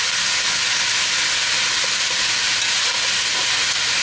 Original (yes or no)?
yes